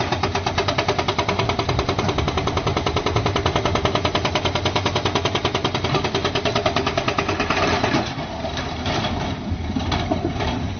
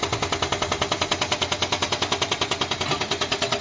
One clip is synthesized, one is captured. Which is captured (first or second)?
second